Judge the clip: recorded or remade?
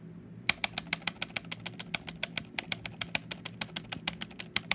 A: recorded